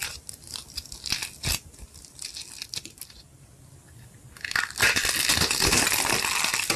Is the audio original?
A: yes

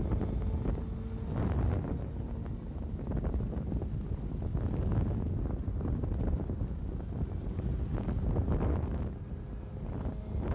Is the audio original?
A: yes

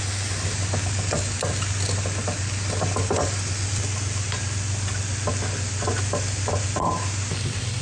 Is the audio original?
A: yes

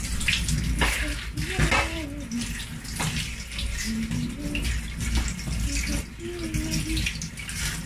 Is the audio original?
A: yes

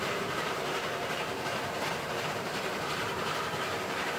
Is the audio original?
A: no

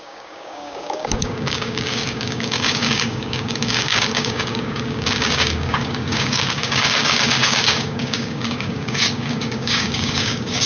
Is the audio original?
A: no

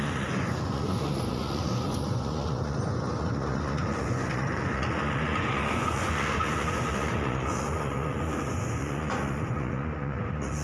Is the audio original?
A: no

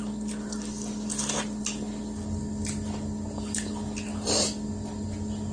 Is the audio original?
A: yes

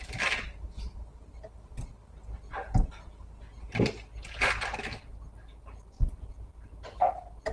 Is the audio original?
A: yes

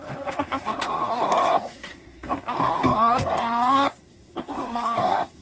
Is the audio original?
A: no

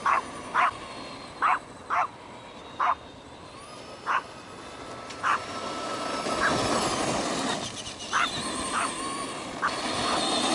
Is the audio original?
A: yes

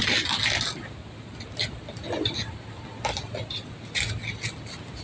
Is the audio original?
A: yes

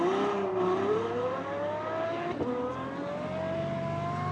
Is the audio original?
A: yes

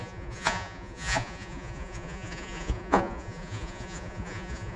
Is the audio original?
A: no